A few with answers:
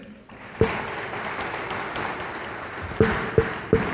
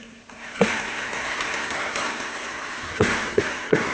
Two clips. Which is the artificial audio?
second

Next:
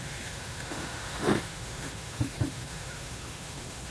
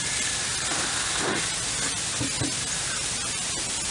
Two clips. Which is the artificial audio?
first